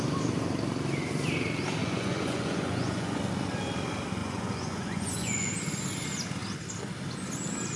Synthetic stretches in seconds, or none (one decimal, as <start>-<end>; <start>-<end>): 1.8-3.2; 4.2-5.5